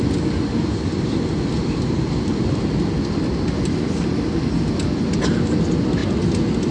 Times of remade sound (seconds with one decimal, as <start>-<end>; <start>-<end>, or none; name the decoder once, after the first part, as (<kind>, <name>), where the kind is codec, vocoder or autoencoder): none